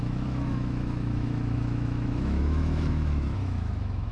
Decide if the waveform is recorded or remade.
remade